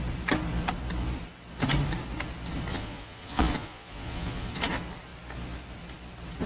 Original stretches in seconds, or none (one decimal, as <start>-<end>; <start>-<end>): 0.0-2.7; 4.6-6.5